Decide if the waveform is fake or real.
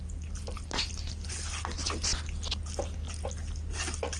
real